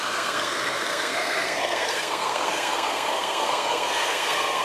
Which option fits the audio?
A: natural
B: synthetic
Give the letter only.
B